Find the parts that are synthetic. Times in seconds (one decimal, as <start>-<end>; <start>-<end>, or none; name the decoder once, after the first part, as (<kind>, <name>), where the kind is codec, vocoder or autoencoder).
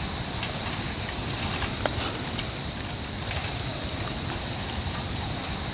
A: 0.0-5.7 (vocoder, BigVGAN v2)